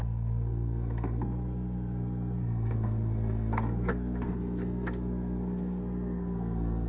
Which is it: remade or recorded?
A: remade